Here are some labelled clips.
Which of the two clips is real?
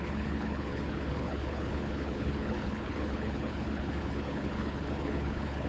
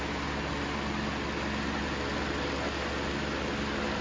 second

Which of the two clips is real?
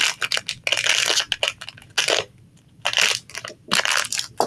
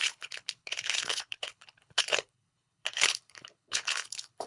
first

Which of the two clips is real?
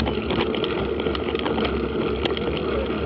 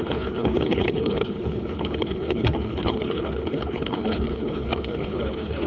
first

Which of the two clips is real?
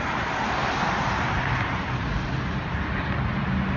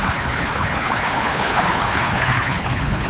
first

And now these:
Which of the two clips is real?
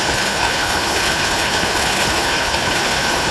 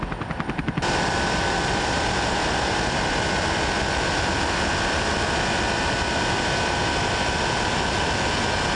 second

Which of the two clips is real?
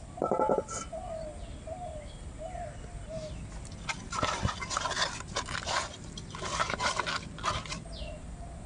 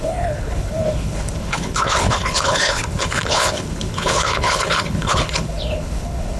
first